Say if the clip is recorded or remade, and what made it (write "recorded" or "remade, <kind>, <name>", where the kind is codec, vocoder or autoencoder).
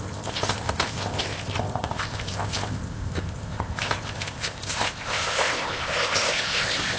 remade, codec, ZipCodec